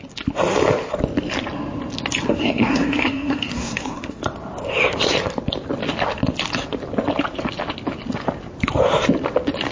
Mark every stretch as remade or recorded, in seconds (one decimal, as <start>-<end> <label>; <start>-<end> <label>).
0.0-2.3 recorded; 2.3-4.2 remade; 4.2-9.7 recorded